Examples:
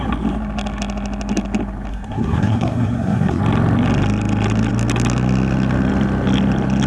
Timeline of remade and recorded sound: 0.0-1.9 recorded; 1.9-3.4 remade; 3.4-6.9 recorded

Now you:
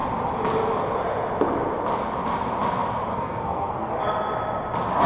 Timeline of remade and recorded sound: 0.0-3.1 recorded; 3.1-3.9 remade; 3.9-5.1 recorded

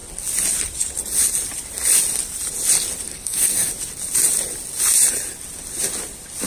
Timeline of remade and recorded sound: 0.0-3.1 recorded; 3.1-3.7 remade; 3.7-6.5 recorded

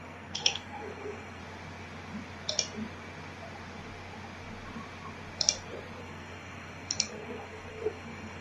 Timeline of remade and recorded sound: 0.0-1.4 remade; 1.4-6.0 recorded; 6.0-8.4 remade

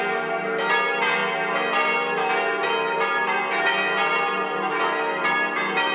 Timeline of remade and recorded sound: 0.0-5.9 recorded